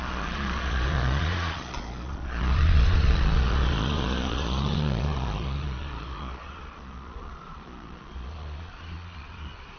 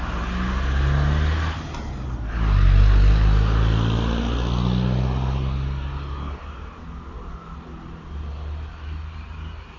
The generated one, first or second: first